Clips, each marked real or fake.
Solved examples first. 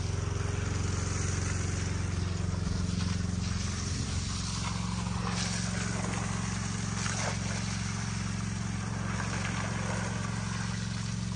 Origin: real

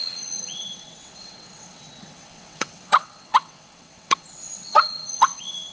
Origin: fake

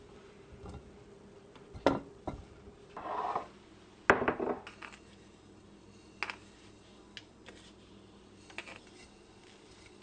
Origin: real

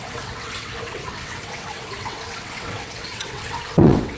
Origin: fake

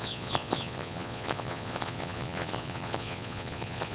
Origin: fake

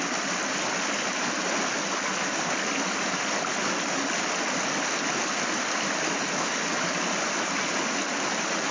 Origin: real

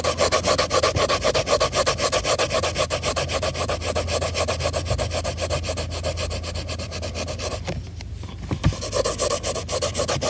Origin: real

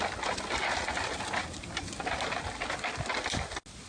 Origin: real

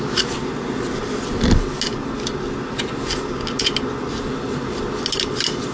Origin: real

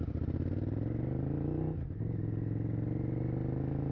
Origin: real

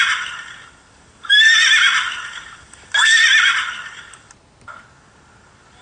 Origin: real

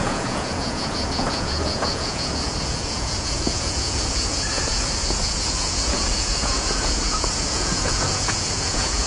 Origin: fake